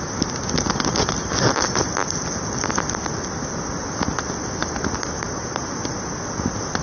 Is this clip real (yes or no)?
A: yes